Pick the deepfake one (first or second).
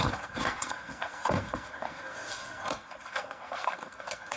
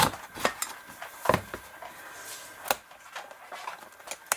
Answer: first